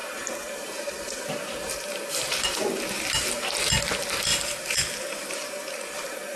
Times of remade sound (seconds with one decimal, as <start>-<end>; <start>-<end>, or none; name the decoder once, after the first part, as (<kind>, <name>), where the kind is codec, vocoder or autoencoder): 0.0-6.4 (vocoder, BigVGAN v2)